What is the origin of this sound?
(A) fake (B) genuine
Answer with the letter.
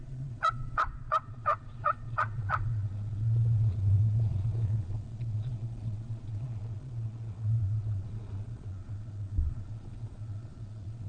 A